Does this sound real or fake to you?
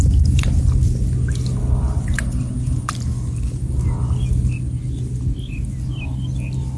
real